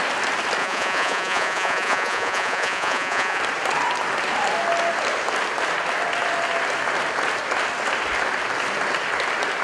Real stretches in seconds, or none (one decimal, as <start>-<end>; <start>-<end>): 0.0-0.6; 3.4-9.6